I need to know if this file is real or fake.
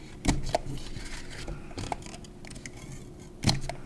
real